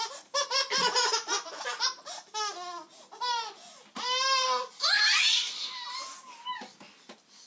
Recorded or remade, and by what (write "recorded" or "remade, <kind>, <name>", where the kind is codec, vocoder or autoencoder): recorded